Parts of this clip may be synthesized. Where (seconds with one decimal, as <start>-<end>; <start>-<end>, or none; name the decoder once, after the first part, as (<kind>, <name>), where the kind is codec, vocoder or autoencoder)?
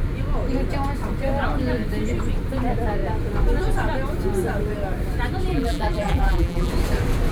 5.5-6.7 (vocoder, BigVGAN v2)